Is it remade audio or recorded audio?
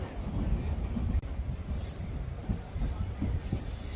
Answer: remade